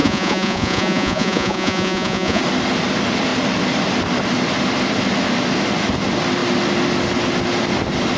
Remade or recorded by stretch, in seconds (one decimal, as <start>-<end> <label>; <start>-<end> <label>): 0.0-2.4 remade; 2.4-8.2 recorded